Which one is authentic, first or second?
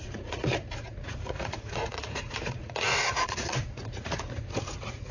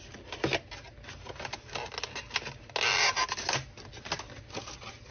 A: second